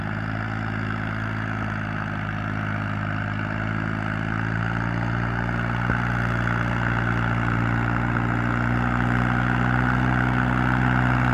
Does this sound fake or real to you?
real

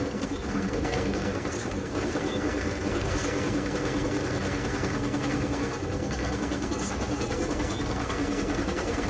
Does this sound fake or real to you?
fake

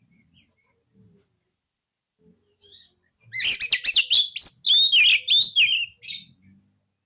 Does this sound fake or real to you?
real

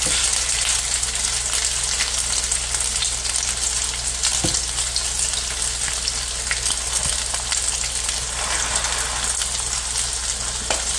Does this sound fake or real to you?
real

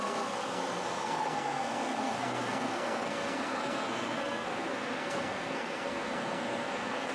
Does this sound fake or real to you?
fake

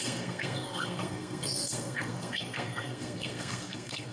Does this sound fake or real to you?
fake